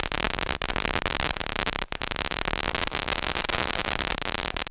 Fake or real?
real